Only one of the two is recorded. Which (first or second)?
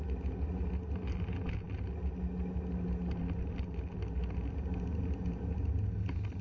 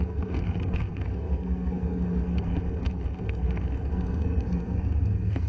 first